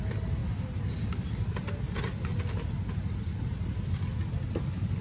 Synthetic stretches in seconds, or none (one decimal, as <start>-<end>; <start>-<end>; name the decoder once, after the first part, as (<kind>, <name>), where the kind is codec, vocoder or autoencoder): none